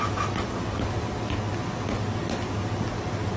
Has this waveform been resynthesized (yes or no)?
no